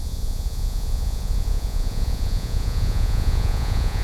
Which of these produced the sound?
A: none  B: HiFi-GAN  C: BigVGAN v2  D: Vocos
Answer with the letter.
D